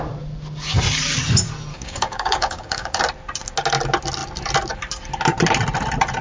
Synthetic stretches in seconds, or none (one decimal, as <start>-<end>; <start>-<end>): 1.7-3.0